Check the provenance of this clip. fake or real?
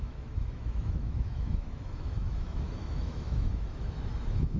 fake